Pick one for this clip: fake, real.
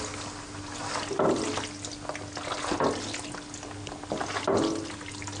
real